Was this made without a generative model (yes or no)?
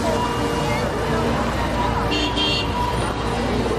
yes